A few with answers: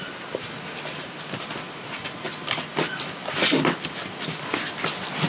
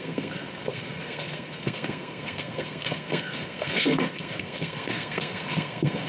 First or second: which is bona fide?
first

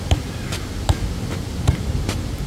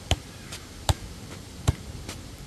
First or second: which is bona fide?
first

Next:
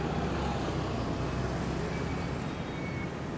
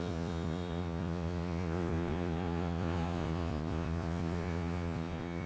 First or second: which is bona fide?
first